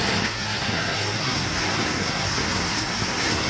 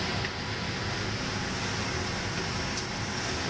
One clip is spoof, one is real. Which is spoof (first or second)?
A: first